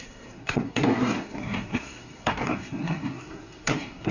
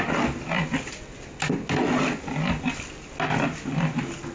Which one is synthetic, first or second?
first